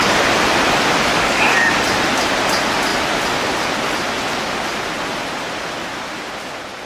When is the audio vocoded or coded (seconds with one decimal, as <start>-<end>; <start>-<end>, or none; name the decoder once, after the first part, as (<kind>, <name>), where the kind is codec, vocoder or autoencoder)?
1.1-1.7 (codec, DAC)